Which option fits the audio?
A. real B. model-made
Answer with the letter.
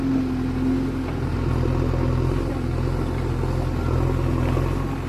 A